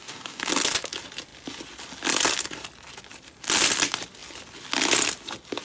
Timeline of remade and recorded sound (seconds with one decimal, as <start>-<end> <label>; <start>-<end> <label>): 0.0-0.5 remade; 0.5-5.6 recorded